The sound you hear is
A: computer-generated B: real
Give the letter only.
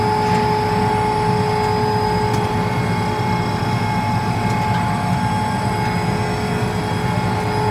B